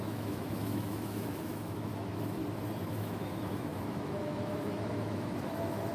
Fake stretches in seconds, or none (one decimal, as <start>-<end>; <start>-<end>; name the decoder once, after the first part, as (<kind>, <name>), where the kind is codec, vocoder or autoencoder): 0.0-2.4 (autoencoder, DAC-VAE); 2.9-5.9